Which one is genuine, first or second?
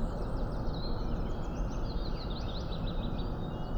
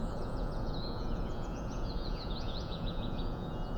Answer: first